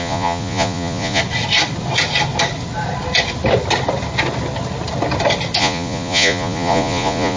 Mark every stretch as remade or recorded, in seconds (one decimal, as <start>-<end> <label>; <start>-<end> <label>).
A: 0.0-1.2 remade; 1.2-5.6 recorded; 5.6-7.4 remade